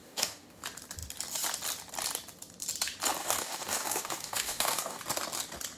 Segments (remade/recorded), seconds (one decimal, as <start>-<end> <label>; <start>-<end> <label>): 0.0-0.6 remade; 0.6-3.2 recorded; 3.2-5.0 remade; 5.0-5.8 recorded